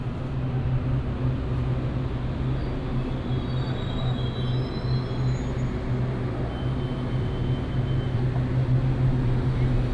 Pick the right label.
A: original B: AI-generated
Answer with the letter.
A